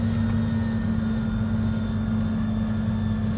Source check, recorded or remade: recorded